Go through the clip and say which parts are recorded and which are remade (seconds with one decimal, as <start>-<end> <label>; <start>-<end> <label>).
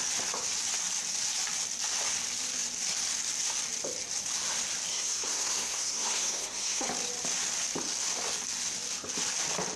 0.0-4.9 recorded; 4.9-6.9 remade; 6.9-9.8 recorded